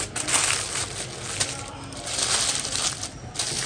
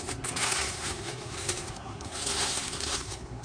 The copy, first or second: second